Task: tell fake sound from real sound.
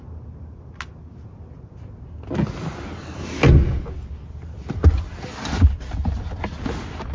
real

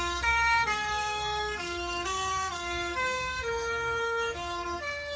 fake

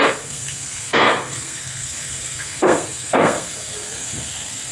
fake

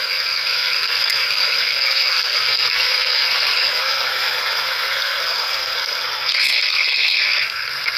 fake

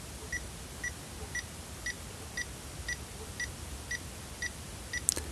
real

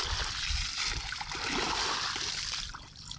real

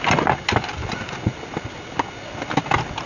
real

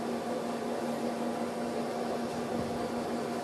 real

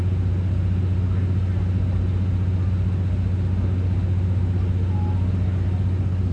real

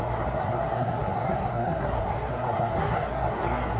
fake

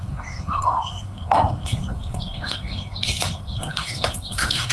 fake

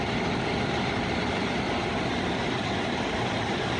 real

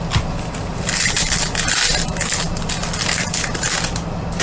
real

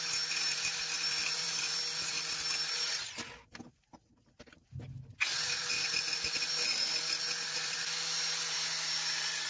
real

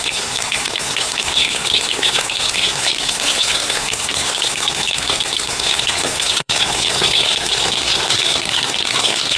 fake